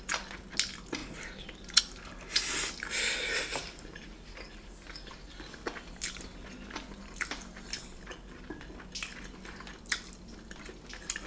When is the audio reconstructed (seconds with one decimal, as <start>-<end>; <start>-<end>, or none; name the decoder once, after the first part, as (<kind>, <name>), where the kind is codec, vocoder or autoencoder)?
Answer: none

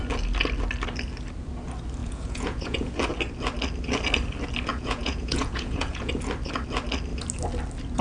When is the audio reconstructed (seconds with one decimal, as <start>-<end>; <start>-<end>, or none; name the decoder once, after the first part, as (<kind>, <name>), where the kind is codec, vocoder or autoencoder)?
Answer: 2.0-2.9 (vocoder, Vocos); 4.7-6.1

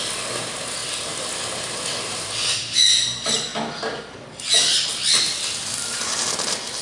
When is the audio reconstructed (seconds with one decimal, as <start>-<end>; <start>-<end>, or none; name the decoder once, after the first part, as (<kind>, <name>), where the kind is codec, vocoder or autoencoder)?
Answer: none

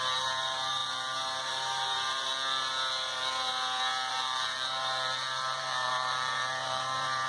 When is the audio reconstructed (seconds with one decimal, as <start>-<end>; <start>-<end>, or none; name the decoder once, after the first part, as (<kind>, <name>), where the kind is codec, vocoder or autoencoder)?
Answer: 0.0-2.3 (vocoder, BigVGAN v2); 4.1-7.3

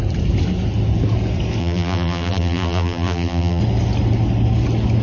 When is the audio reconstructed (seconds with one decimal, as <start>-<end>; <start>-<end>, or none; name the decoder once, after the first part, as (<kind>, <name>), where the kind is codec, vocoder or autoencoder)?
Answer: 1.6-3.6 (vocoder, BigVGAN v2)

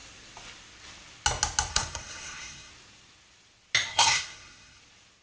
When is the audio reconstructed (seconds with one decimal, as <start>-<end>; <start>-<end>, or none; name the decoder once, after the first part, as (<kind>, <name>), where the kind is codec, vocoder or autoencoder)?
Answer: 1.7-2.7 (codec, SNAC); 3.9-4.8

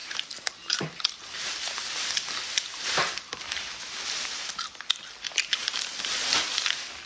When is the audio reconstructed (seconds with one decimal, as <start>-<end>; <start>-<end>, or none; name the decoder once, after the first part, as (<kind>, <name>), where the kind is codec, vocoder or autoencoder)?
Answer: none

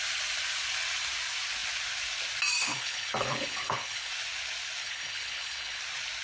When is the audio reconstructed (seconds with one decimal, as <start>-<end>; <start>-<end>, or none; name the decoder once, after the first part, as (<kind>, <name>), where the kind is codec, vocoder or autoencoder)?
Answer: 2.7-4.1 (codec, HILCodec); 4.8-5.8